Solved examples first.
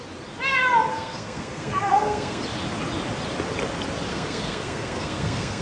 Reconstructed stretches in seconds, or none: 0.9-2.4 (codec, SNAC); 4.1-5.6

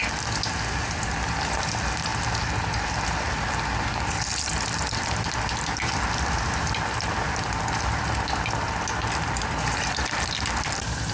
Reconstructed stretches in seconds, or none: none

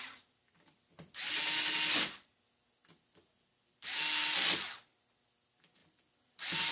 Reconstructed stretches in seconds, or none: none

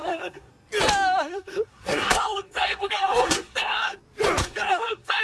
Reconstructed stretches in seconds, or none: 0.0-0.5 (codec, SNAC); 1.2-4.0; 4.4-5.2

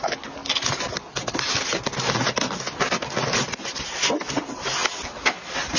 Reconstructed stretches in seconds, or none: none

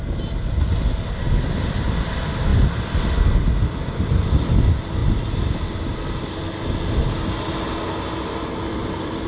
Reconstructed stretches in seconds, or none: none